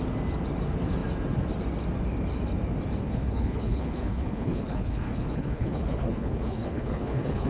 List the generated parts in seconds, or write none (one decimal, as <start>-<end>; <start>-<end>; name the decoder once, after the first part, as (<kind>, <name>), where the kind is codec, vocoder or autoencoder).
3.0-7.5 (codec, HILCodec)